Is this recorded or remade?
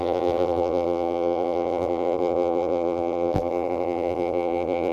remade